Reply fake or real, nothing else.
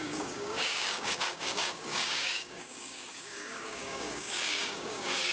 fake